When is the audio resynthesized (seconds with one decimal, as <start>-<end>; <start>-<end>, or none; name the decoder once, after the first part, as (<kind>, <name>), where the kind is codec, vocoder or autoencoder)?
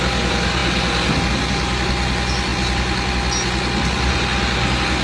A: none